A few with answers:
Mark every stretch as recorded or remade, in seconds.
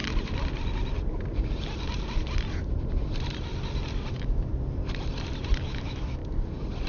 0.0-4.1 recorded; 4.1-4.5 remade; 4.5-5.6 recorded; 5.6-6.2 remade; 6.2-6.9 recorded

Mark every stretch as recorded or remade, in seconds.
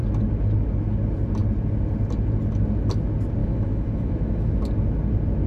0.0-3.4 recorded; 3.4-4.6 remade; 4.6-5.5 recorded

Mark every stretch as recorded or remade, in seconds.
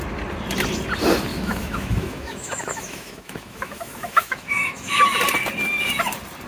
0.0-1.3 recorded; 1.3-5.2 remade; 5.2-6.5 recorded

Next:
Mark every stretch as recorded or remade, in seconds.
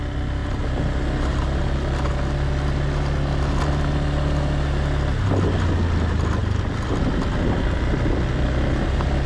0.0-9.3 recorded